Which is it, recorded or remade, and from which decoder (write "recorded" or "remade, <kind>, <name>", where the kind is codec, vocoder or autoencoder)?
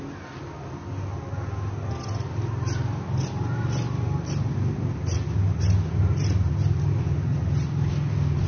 recorded